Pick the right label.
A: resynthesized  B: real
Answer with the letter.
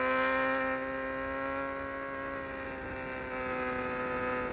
B